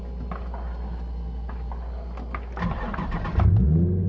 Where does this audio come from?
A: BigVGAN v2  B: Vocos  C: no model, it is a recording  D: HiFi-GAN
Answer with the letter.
C